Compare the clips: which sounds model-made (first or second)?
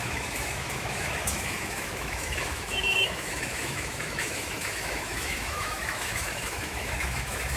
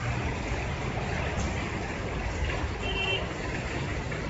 first